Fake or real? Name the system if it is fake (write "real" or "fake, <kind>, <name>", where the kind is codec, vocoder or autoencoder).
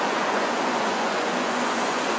fake, vocoder, Vocos